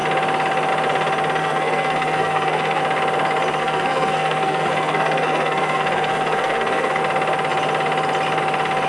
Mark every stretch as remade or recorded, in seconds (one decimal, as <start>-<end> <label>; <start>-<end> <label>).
0.0-1.4 recorded; 1.4-2.8 remade; 2.8-3.6 recorded; 3.6-7.0 remade; 7.0-8.9 recorded